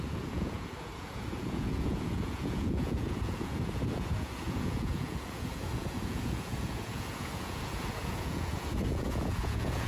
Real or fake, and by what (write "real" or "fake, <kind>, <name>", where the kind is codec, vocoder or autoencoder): fake, vocoder, Vocos